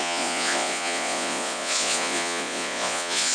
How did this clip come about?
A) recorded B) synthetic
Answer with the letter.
B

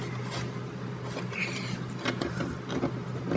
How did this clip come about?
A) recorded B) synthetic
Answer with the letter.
A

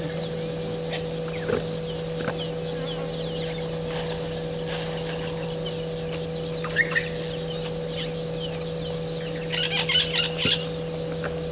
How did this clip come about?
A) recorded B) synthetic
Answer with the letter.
A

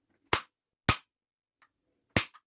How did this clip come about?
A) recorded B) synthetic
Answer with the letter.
A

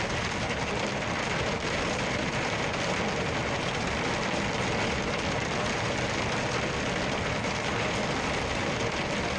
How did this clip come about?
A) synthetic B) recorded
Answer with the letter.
B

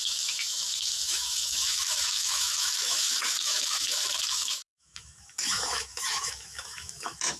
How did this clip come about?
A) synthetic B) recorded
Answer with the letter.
A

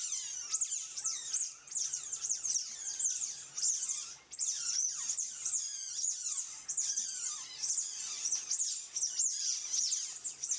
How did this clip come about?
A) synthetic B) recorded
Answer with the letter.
B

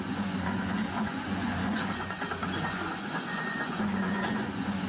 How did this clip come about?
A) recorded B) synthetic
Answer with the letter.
B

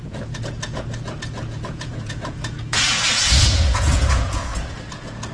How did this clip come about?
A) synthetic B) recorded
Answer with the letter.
A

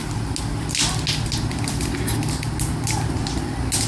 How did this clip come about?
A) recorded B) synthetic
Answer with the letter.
A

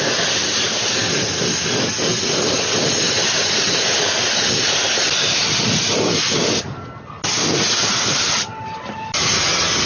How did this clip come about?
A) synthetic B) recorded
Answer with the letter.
B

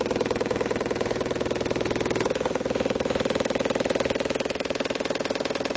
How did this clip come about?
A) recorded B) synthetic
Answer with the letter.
B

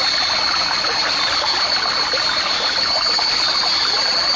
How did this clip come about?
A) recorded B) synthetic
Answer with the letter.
A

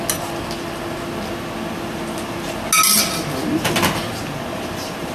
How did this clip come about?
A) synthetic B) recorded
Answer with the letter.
B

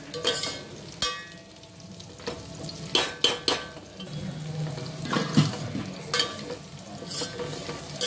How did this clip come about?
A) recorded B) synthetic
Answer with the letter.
A